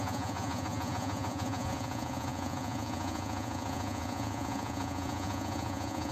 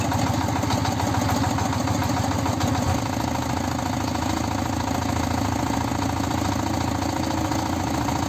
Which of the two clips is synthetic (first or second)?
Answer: first